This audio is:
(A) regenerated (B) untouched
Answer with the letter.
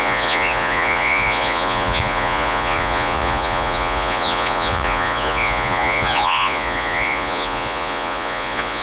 A